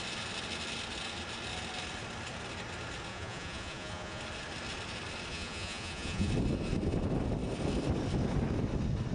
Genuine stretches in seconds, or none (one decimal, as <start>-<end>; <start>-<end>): 0.0-3.1; 4.2-5.3; 6.3-9.1